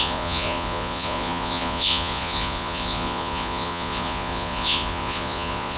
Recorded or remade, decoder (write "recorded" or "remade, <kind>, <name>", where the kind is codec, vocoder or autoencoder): remade, vocoder, Vocos